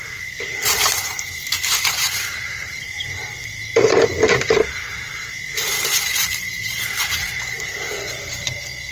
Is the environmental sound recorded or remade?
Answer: remade